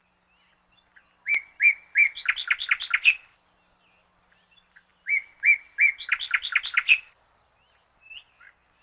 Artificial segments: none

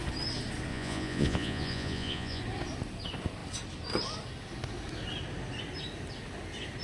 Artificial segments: 0.7-2.4 (vocoder, Vocos)